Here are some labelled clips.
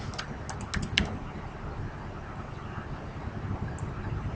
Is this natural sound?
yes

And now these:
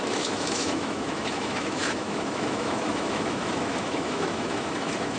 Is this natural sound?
no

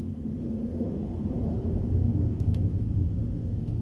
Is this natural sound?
no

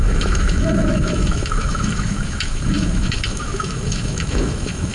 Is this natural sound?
no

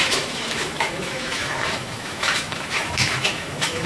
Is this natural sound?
no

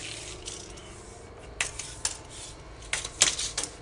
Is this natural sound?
yes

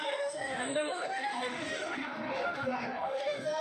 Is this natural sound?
no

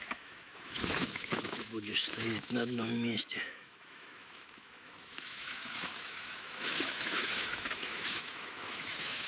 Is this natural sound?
no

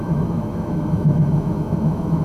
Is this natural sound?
no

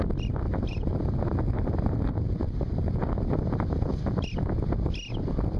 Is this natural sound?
yes